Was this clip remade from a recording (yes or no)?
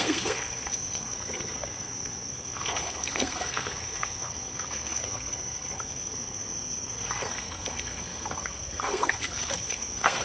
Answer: yes